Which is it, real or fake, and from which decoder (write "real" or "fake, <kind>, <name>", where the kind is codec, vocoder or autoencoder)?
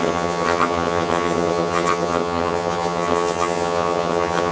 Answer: fake, vocoder, HiFi-GAN